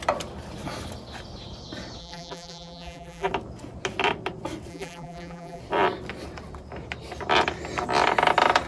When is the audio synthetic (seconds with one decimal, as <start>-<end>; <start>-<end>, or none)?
2.0-3.3; 4.7-5.6